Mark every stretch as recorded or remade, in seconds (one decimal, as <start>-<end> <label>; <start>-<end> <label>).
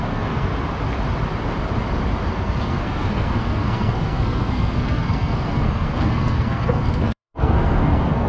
0.0-0.5 remade; 0.5-2.3 recorded; 2.3-8.3 remade